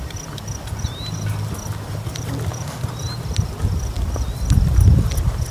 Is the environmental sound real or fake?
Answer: real